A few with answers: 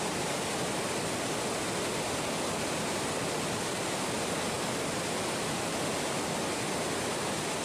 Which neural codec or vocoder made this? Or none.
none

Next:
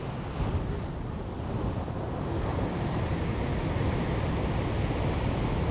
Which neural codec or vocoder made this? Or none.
none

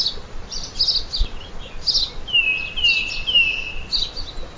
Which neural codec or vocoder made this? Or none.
none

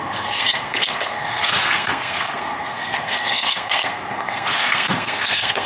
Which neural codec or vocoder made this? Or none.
codec, SNAC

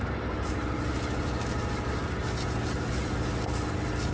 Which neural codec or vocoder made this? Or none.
none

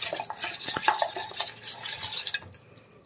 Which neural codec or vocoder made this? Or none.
none